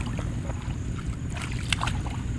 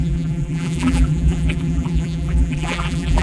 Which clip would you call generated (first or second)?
second